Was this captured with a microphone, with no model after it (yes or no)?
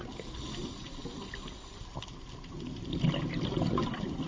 yes